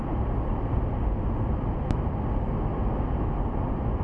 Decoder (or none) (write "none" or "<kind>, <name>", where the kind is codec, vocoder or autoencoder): none